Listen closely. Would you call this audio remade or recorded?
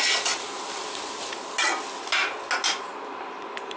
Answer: recorded